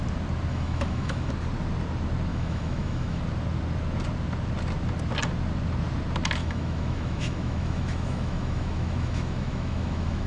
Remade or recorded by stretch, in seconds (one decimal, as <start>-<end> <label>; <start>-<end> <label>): 0.0-0.5 recorded; 0.5-1.3 remade; 1.3-2.3 recorded; 2.3-3.2 remade; 3.2-6.4 recorded; 6.4-10.3 remade